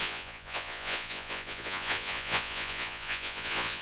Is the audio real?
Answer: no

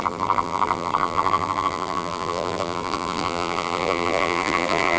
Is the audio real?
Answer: no